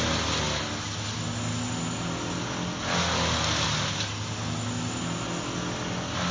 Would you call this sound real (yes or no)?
yes